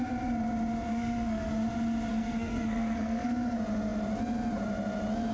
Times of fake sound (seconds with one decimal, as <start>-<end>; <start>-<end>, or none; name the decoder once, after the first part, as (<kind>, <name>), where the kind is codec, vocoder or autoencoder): 0.9-1.5 (codec, SNAC); 2.1-3.3